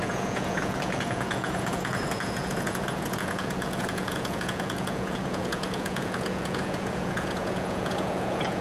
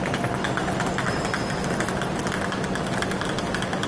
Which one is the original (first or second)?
second